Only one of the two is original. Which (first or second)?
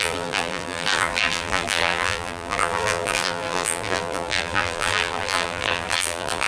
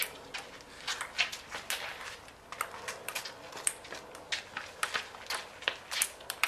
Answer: second